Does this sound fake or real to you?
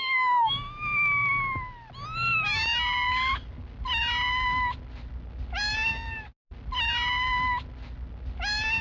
real